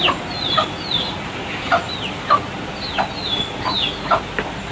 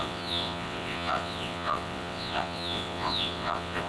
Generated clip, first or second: second